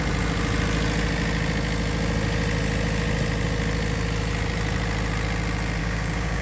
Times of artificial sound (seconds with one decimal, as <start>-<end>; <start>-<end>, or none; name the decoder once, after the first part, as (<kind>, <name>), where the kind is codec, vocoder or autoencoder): 5.8-6.4 (codec, DAC)